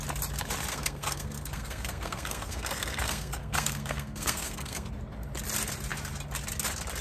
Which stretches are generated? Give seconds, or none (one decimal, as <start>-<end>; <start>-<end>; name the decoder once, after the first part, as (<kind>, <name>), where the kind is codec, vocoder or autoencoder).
0.7-4.9 (codec, SNAC)